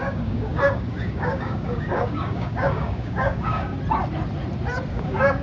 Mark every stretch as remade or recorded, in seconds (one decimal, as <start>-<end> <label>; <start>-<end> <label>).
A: 0.0-3.7 remade; 3.7-4.9 recorded; 4.9-5.4 remade